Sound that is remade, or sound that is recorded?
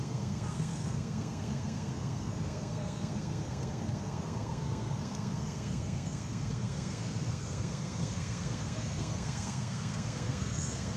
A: remade